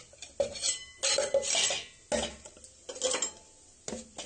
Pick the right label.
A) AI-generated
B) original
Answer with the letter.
B